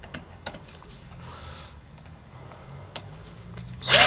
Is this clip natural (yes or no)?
no